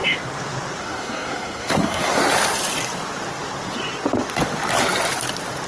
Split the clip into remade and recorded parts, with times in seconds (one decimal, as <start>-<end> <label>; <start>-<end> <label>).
0.0-0.8 recorded; 0.8-2.2 remade; 2.2-5.7 recorded